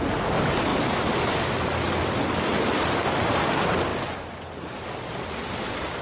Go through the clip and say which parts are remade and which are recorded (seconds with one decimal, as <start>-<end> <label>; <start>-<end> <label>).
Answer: 0.0-6.0 recorded